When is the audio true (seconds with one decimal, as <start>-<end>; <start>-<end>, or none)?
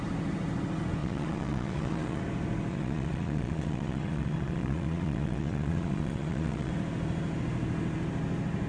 0.0-1.0; 2.2-2.7; 6.7-8.7